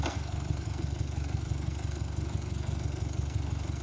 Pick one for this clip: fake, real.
fake